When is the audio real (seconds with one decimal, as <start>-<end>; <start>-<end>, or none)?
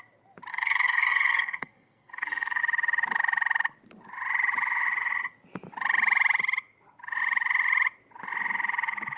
0.0-0.5; 2.6-9.2